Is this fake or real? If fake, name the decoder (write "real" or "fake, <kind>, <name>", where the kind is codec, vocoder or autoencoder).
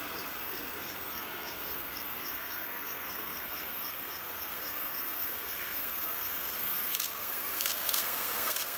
fake, codec, SNAC